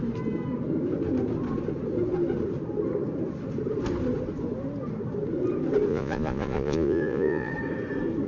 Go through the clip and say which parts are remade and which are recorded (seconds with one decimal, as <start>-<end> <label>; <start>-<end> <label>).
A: 0.0-5.9 recorded; 5.9-7.5 remade; 7.5-8.3 recorded